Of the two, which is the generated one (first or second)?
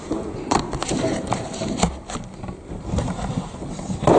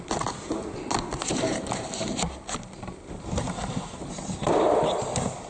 first